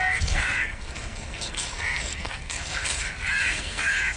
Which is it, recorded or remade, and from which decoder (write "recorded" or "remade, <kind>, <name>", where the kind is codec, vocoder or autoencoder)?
remade, codec, SNAC